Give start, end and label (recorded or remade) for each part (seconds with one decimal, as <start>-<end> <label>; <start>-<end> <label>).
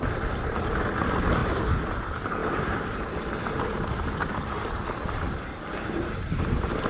0.0-6.9 recorded